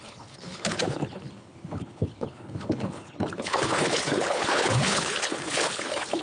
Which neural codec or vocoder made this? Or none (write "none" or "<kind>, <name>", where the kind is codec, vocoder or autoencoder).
codec, HILCodec